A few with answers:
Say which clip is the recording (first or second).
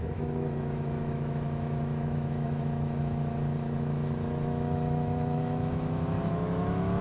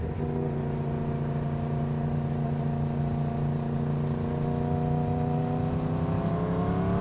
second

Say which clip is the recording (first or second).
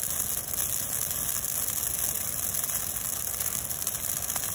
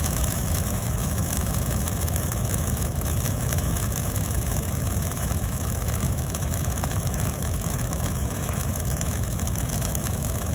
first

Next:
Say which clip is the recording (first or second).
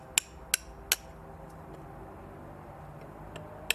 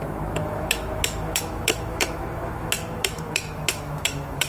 first